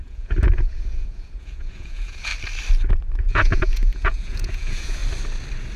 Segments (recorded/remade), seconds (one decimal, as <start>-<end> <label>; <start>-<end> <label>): 0.0-2.3 remade; 2.3-3.2 recorded; 3.2-5.0 remade; 5.0-5.8 recorded